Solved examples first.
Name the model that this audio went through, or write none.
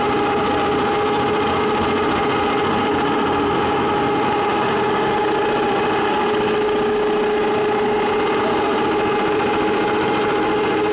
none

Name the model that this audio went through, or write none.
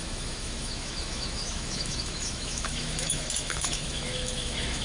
autoencoder, DAC-VAE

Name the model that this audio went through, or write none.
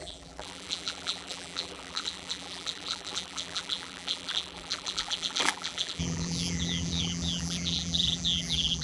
vocoder, BigVGAN v2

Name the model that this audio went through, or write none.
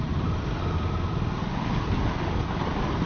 none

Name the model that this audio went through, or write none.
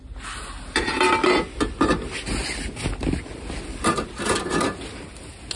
none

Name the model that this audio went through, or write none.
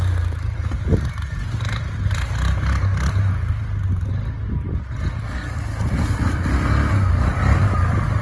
none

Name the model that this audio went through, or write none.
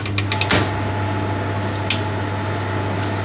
none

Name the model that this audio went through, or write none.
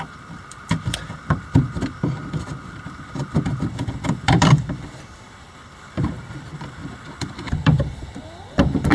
vocoder, BigVGAN v2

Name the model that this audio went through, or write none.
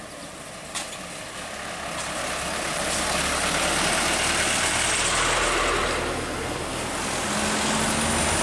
none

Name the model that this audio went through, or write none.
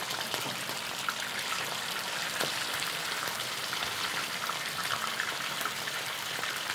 vocoder, BigVGAN v2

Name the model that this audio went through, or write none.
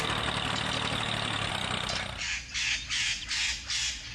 none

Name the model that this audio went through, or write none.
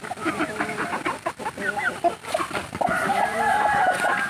none